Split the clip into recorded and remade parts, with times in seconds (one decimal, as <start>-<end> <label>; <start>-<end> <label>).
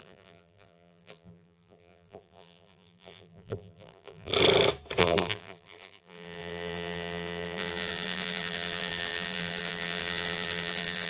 0.0-4.3 remade; 4.3-5.0 recorded; 5.0-11.1 remade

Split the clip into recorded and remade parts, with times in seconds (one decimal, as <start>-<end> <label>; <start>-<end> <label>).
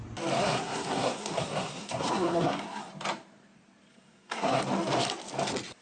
0.0-0.4 recorded; 0.4-2.9 remade; 2.9-3.9 recorded; 3.9-4.6 remade; 4.6-5.8 recorded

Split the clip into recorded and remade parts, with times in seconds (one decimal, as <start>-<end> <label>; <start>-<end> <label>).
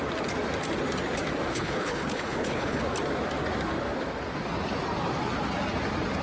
0.0-1.5 recorded; 1.5-2.8 remade; 2.8-6.2 recorded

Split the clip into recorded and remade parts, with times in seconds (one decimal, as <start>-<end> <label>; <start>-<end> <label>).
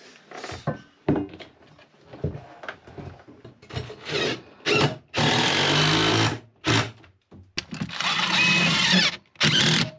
0.0-10.0 recorded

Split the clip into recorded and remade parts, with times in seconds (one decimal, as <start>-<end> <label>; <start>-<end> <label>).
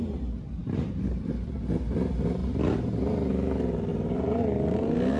0.0-0.6 recorded; 0.6-1.3 remade; 1.3-3.9 recorded; 3.9-4.4 remade; 4.4-5.2 recorded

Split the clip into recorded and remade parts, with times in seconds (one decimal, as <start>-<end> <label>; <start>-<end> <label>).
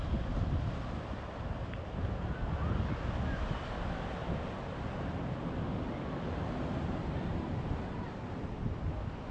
0.0-9.3 recorded